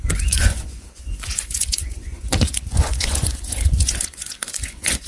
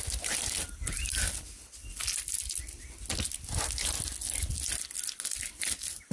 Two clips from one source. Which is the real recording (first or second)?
second